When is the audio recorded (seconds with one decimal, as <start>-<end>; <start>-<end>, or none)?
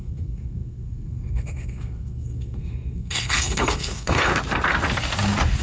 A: 4.3-5.6